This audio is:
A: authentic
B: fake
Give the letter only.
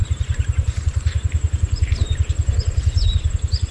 B